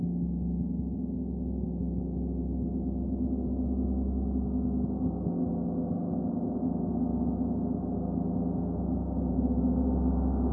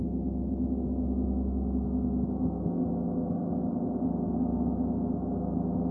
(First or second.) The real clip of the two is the first